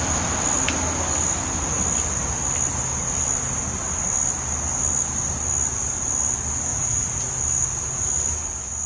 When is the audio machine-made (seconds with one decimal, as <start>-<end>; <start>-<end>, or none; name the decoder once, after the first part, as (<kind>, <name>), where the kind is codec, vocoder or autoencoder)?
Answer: 6.7-7.2 (vocoder, Vocos)